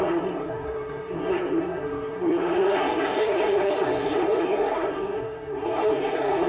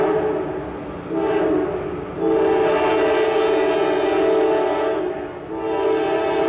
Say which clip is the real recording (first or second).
second